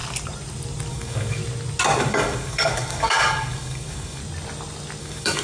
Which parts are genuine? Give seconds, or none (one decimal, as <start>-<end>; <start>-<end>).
0.0-0.9; 1.4-2.0; 4.2-5.0